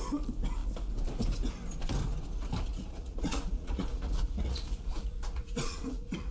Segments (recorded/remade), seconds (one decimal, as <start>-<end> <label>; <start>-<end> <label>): 0.0-2.7 recorded; 2.7-6.3 remade